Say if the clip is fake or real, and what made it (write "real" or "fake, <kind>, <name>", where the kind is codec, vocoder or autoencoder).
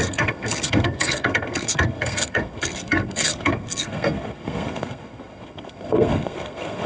fake, codec, SNAC